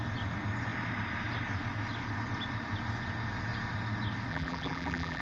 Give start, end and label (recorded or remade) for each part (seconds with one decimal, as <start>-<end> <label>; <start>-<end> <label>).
0.0-4.3 recorded; 4.3-5.2 remade

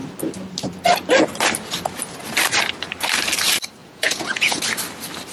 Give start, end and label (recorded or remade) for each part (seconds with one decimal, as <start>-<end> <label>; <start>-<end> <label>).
0.0-3.8 recorded; 3.8-4.6 remade; 4.6-5.3 recorded

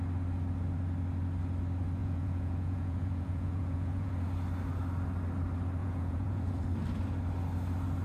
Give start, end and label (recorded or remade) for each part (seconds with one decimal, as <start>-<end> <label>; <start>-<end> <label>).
0.0-2.0 recorded; 2.0-4.1 remade; 4.1-5.8 recorded; 5.8-6.6 remade; 6.6-8.0 recorded

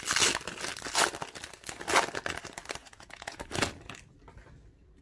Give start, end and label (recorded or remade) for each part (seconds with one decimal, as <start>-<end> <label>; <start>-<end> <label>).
0.0-2.8 recorded; 2.8-3.4 remade; 3.4-5.0 recorded

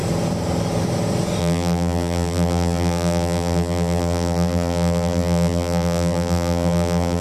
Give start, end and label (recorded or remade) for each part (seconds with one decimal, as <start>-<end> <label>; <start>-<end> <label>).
0.0-1.4 recorded; 1.4-7.2 remade

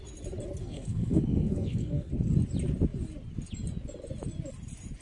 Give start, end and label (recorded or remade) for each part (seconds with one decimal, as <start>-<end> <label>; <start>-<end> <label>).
0.0-0.6 recorded; 0.6-2.1 remade; 2.1-5.0 recorded